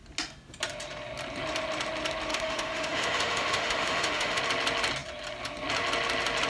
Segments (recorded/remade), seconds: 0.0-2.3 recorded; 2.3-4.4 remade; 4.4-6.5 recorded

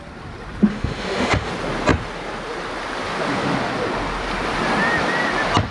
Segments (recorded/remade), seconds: 0.0-0.7 recorded; 0.7-1.5 remade; 1.5-5.7 recorded

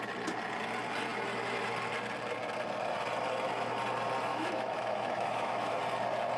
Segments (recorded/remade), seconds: 0.0-4.3 recorded; 4.3-5.8 remade; 5.8-6.4 recorded

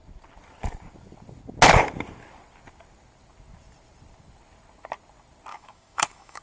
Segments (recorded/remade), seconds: 0.0-5.5 recorded; 5.5-6.4 remade

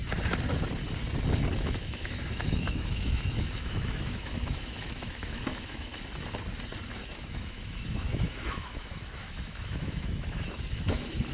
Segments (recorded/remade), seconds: 0.0-1.6 recorded; 1.6-5.9 remade; 5.9-6.9 recorded; 6.9-11.3 remade

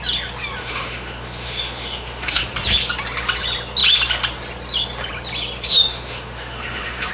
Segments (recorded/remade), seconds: 0.0-0.6 recorded; 0.6-2.4 remade; 2.4-5.7 recorded; 5.7-7.1 remade

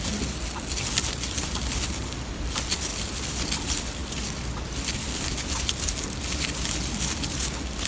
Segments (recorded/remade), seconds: 0.0-7.9 recorded

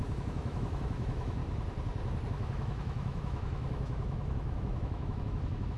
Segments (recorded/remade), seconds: 0.0-1.4 remade; 1.4-2.3 recorded; 2.3-5.8 remade